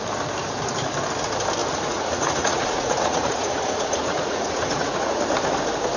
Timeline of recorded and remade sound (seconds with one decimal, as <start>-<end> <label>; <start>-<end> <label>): 0.0-1.6 recorded; 1.6-5.2 remade; 5.2-6.0 recorded